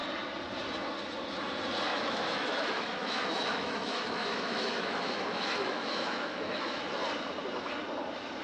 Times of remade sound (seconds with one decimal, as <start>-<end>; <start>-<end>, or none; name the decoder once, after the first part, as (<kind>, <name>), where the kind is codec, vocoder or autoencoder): 1.9-6.8 (autoencoder, DAC-VAE)